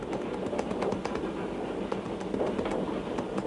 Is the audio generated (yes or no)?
no